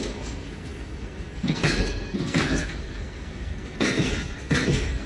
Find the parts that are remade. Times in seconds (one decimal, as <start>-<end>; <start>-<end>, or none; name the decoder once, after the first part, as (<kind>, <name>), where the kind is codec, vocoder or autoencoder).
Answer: 0.0-5.1 (codec, SNAC)